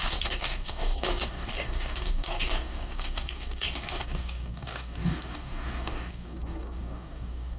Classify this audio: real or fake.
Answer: fake